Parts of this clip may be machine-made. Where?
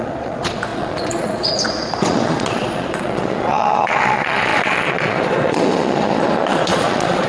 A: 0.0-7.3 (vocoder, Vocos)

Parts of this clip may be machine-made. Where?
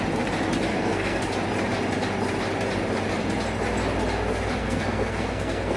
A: 0.7-1.2 (codec, SNAC); 4.6-5.8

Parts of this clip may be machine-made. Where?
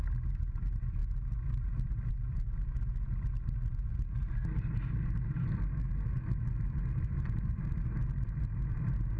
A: none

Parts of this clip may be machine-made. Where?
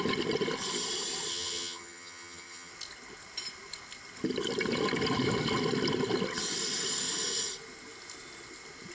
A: 1.3-2.7 (vocoder, HiFi-GAN)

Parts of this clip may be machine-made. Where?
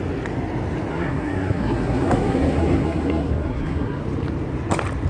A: 0.9-4.0 (codec, SNAC)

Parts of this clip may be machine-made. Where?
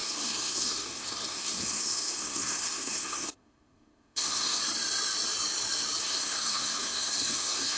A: 0.0-4.6 (codec, SNAC); 6.0-7.8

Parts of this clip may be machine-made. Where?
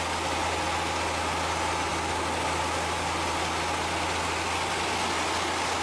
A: none